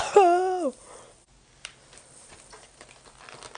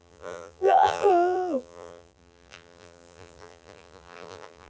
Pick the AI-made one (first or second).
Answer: second